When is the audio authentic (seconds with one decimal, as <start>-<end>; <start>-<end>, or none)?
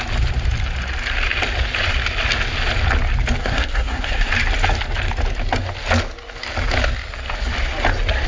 0.0-3.4; 4.3-8.3